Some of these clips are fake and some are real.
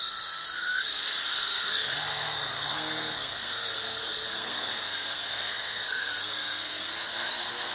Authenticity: fake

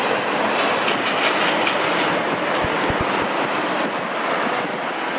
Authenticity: real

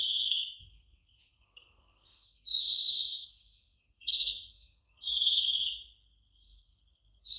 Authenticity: fake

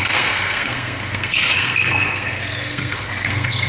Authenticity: fake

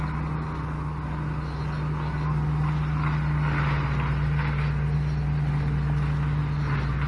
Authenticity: real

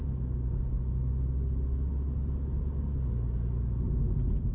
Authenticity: real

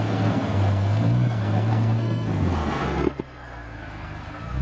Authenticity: fake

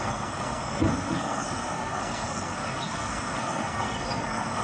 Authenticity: fake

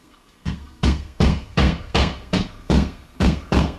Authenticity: fake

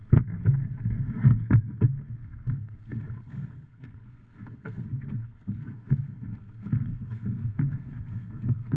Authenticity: fake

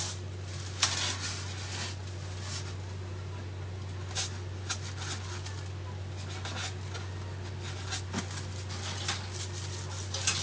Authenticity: real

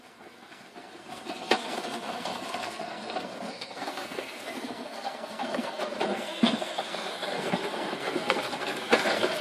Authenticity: fake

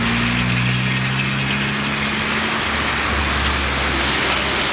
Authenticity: real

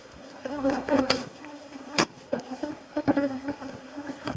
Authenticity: fake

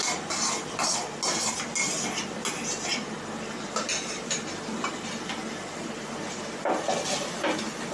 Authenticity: real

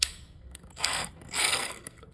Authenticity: fake